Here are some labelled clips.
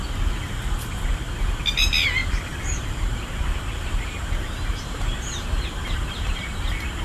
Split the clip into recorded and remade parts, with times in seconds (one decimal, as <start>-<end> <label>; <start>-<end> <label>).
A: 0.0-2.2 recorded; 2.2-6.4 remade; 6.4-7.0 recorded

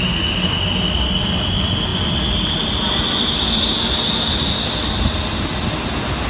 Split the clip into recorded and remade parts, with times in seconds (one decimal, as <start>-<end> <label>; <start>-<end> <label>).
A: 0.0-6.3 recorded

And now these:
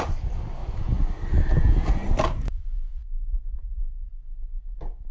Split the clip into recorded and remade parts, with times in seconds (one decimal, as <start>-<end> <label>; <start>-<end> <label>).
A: 0.0-0.6 recorded; 0.6-2.2 remade; 2.2-2.9 recorded; 2.9-5.1 remade

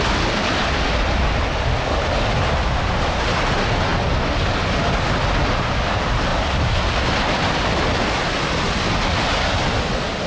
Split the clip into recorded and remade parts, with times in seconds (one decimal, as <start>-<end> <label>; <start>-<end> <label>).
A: 0.0-10.3 recorded